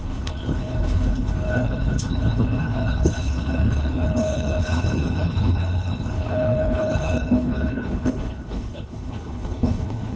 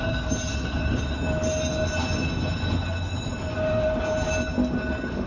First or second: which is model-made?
first